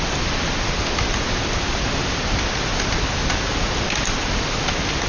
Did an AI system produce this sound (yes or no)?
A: no